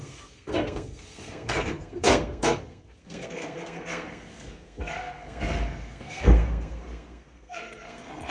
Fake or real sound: fake